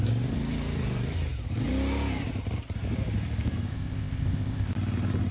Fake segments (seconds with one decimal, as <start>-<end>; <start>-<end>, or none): 3.7-4.7